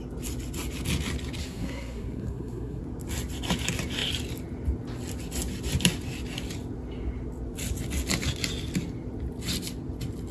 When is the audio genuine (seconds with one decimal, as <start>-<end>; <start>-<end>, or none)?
0.0-1.4; 2.8-10.3